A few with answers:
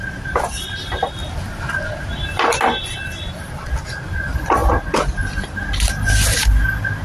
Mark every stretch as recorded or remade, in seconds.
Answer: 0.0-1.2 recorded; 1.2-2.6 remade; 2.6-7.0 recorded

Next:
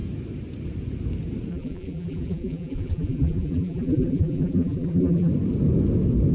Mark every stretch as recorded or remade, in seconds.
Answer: 0.0-1.5 recorded; 1.5-5.3 remade; 5.3-6.3 recorded

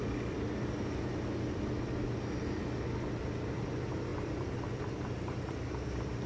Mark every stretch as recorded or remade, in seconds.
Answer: 0.0-6.3 recorded

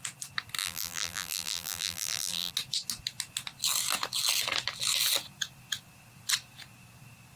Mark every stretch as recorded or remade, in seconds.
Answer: 0.0-0.6 recorded; 0.6-2.5 remade; 2.5-7.4 recorded